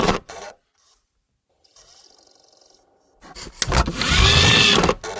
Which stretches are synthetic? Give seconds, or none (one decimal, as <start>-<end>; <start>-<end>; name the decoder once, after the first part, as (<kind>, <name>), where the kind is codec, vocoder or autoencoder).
0.0-0.9 (vocoder, Vocos)